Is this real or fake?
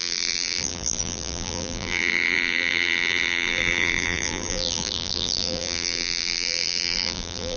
fake